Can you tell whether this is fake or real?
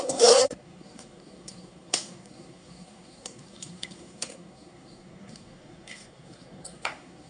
fake